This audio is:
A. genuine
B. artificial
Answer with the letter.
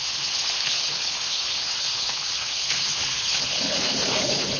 B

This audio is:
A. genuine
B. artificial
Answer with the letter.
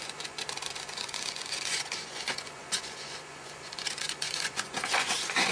B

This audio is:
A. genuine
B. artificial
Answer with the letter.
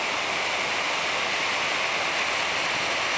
A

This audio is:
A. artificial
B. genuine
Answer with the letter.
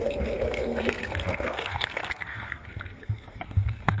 A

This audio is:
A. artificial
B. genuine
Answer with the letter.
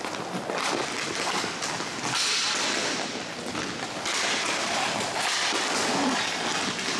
B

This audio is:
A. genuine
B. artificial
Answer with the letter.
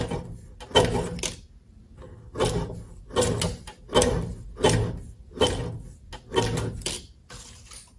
A